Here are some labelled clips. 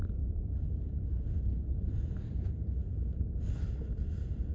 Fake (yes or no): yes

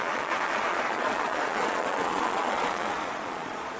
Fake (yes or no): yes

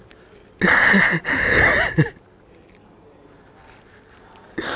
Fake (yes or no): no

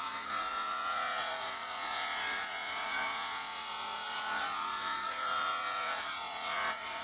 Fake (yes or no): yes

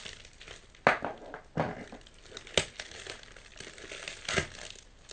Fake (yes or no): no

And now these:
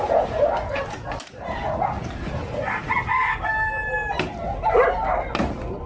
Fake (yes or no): no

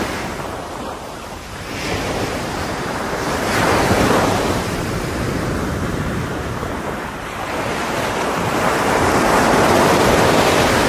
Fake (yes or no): yes